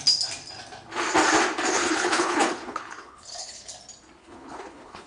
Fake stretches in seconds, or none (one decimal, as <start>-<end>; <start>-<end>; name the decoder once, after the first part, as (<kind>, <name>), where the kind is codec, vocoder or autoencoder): 1.7-3.7 (codec, HILCodec); 4.2-5.1